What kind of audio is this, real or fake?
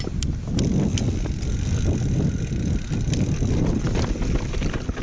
real